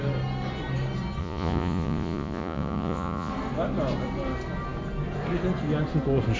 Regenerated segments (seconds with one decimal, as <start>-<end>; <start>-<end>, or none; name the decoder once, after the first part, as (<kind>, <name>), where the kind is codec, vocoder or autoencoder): 1.2-3.3 (vocoder, Vocos)